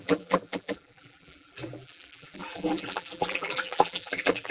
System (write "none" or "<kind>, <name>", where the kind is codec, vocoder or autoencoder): vocoder, BigVGAN v2